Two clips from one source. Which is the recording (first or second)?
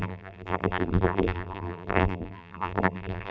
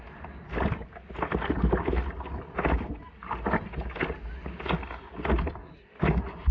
second